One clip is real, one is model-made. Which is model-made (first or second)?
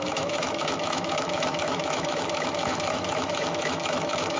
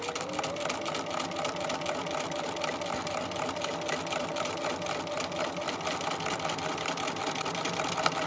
first